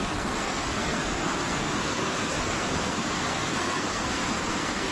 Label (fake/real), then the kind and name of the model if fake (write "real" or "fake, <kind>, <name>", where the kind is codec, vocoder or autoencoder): fake, codec, SNAC